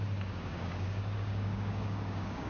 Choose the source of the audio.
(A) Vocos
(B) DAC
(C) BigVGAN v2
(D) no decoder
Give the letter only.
B